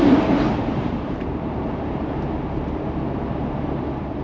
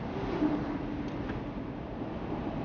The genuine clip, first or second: second